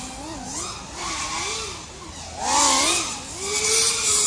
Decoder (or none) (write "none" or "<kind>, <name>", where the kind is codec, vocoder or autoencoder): none